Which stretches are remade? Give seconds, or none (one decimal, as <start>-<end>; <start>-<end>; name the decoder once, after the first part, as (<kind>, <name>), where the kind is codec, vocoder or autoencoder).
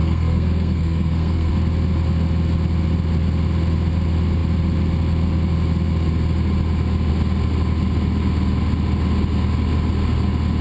0.0-1.5 (codec, SNAC)